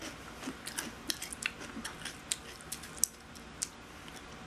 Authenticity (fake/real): real